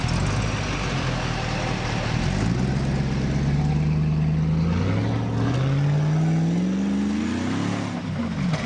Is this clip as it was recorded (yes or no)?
yes